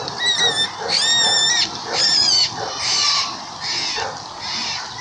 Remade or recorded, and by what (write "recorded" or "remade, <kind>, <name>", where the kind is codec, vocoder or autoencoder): recorded